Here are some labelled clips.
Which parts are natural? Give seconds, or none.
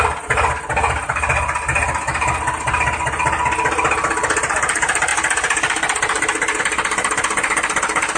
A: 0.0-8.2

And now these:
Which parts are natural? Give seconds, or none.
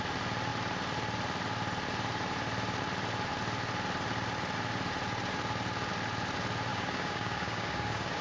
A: 0.0-6.7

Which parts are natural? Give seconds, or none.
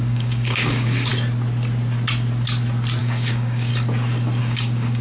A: 1.1-3.0; 3.7-4.4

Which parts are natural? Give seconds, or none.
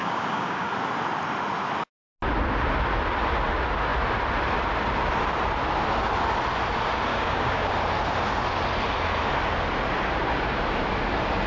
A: 0.7-7.1; 7.7-11.5